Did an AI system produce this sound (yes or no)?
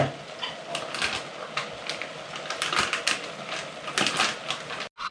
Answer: no